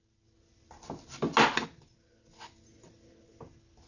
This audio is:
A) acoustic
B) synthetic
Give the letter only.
A